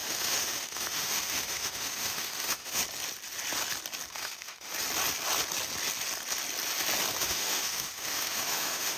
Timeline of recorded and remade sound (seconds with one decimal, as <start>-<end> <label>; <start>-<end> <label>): 0.0-2.8 remade; 2.8-4.1 recorded; 4.1-4.7 remade; 4.7-7.2 recorded; 7.2-9.0 remade

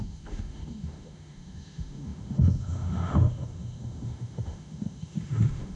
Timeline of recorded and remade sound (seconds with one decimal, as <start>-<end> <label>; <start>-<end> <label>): 0.0-5.8 remade

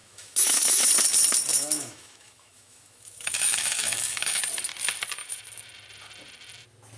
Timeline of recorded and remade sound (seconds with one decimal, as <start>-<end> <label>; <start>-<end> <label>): 0.0-0.9 remade; 0.9-1.5 recorded; 1.5-4.4 remade; 4.4-7.0 recorded

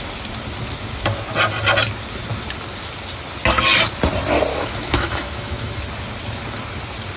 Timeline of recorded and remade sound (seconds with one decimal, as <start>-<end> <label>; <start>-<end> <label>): 0.0-4.5 recorded; 4.5-5.8 remade; 5.8-7.2 recorded

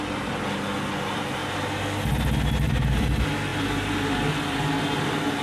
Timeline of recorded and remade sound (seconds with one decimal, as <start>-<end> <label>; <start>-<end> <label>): 0.0-5.4 recorded

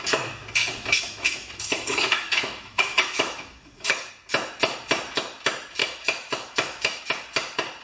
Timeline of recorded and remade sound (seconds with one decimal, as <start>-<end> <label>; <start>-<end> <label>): 0.0-0.6 recorded; 0.6-4.1 remade; 4.1-5.8 recorded; 5.8-7.0 remade; 7.0-7.8 recorded

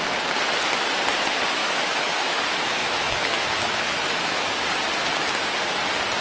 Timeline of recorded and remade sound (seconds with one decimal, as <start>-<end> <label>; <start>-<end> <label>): 0.0-1.6 recorded; 1.6-2.4 remade; 2.4-2.8 recorded; 2.8-4.5 remade; 4.5-6.2 recorded